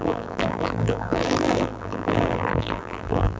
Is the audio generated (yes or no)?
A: yes